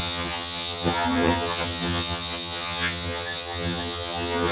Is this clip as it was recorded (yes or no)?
no